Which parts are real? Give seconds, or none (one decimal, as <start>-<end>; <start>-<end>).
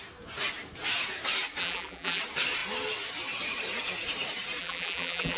0.0-1.6; 2.2-4.6